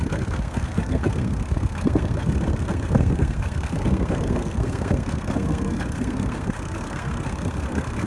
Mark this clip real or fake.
fake